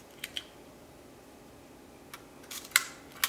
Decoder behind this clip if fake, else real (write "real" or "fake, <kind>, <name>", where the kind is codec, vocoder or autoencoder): real